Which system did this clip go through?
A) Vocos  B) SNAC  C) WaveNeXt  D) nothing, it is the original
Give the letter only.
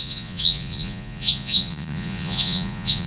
A